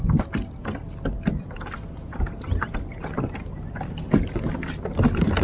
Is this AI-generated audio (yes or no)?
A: no